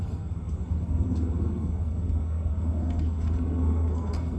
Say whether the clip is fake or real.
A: fake